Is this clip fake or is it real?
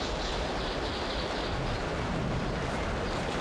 real